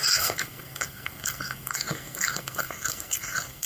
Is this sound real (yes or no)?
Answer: no